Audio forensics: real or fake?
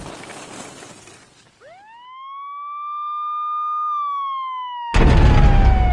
real